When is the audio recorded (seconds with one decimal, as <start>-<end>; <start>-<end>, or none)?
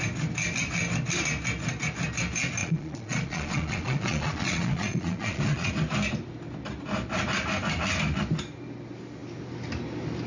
0.0-2.6; 5.7-10.3